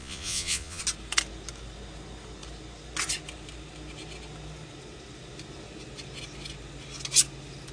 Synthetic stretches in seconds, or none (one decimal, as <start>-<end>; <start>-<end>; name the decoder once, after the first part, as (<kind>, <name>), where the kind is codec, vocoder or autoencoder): 0.0-0.8 (vocoder, Vocos)